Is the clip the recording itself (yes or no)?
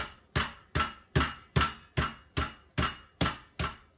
yes